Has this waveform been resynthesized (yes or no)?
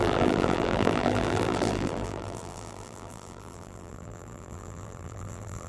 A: yes